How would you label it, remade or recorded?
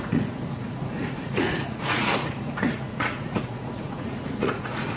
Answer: remade